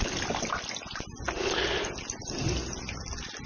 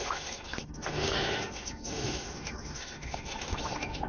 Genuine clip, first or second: first